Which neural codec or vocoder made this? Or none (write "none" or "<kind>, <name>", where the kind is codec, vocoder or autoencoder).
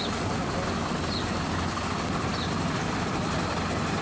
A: none